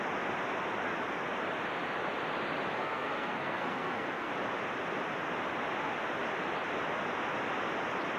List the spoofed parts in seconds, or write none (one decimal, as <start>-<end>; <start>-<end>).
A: 2.8-4.3